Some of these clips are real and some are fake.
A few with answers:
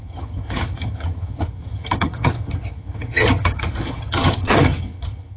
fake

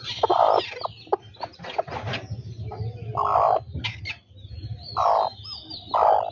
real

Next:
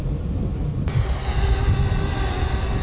real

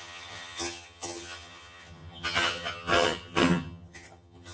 fake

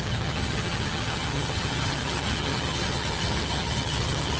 fake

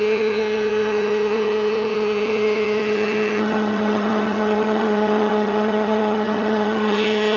fake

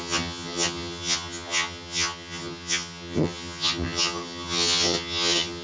fake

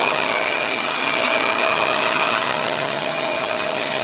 fake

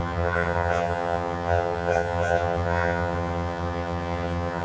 fake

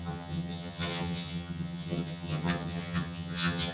fake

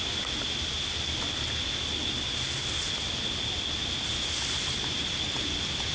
real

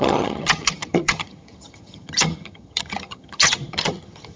fake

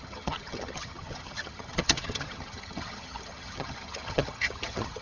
fake